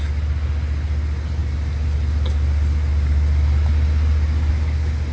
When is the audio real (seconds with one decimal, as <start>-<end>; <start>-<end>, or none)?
0.0-5.1